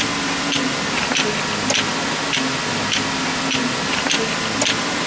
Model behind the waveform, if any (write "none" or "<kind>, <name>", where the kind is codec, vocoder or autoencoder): none